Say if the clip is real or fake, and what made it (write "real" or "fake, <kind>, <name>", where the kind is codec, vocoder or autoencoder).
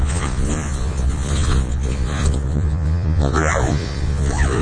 fake, vocoder, Vocos